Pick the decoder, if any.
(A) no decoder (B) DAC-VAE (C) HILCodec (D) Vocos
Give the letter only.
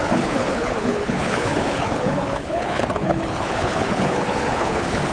C